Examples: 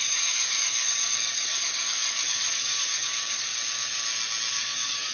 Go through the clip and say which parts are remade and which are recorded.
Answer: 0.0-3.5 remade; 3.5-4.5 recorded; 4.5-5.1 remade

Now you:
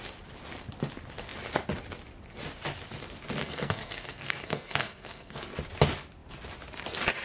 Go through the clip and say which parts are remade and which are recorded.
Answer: 0.0-3.4 recorded; 3.4-5.4 remade; 5.4-7.2 recorded

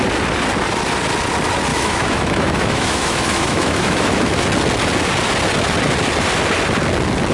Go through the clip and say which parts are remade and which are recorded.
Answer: 0.0-1.7 recorded; 1.7-4.4 remade; 4.4-7.3 recorded